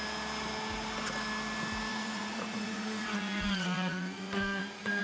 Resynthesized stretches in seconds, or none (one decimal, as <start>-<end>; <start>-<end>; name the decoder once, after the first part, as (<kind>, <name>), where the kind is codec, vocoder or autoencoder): 1.9-5.0 (vocoder, Vocos)